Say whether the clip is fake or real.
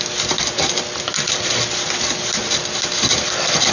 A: real